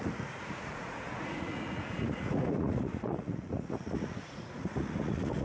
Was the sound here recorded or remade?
remade